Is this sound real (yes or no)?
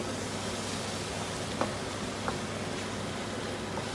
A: yes